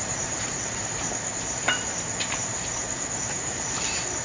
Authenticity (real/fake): fake